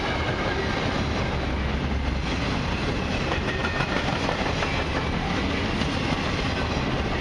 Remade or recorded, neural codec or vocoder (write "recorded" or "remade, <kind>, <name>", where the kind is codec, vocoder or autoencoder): recorded